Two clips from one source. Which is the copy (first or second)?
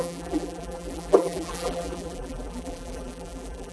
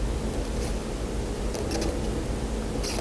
first